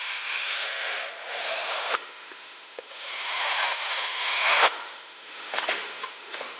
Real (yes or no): no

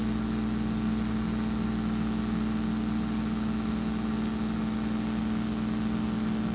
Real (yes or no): yes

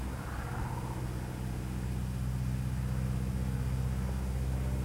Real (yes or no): yes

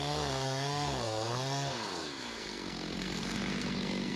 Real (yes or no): no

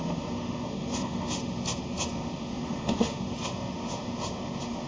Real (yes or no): no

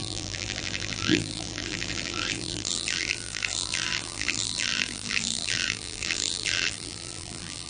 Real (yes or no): no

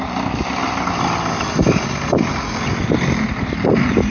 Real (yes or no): yes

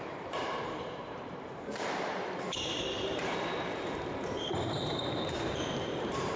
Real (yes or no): no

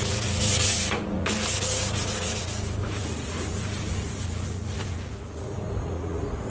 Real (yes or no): no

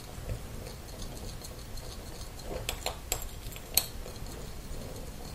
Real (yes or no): yes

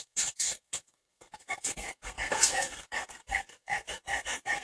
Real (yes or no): no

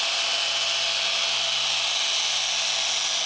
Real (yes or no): yes